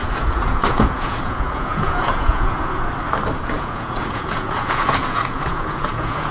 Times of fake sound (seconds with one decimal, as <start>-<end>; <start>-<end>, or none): 0.0-2.9; 3.4-6.3